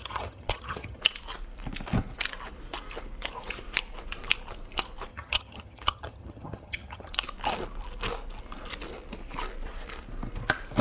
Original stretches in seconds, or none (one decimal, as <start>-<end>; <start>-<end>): 1.0-5.1; 7.1-10.8